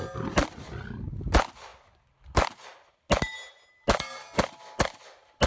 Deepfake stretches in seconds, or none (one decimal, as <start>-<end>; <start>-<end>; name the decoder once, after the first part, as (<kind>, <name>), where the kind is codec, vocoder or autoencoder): none